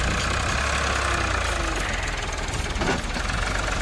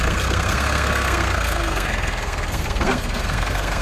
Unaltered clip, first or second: first